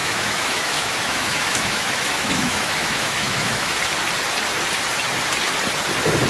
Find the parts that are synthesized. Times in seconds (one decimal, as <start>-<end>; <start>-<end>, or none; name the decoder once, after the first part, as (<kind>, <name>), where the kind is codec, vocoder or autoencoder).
0.0-3.8 (autoencoder, DAC-VAE)